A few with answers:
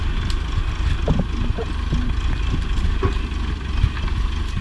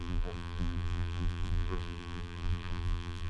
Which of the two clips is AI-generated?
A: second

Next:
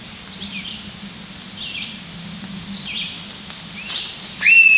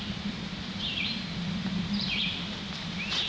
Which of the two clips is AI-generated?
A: second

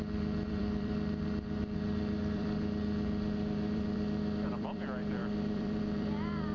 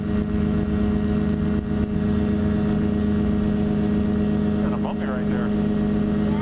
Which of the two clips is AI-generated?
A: first